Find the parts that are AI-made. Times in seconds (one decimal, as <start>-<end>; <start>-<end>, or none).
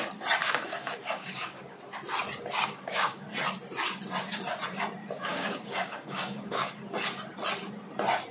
0.4-1.8; 2.6-3.2; 5.3-6.8